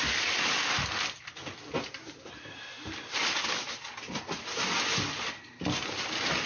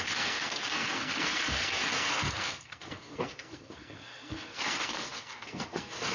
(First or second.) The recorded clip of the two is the first